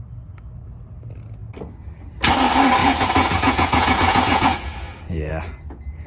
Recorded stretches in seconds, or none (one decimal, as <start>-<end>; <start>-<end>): 0.0-2.8; 5.3-6.1